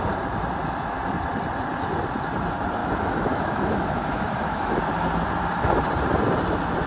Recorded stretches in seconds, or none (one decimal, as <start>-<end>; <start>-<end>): 0.0-2.8; 4.8-6.9